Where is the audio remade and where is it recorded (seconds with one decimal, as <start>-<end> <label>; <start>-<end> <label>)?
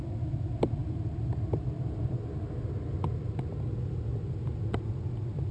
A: 0.0-0.8 recorded; 0.8-3.3 remade; 3.3-4.1 recorded; 4.1-4.8 remade; 4.8-5.5 recorded